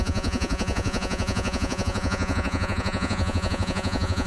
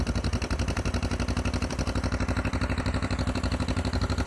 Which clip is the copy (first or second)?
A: first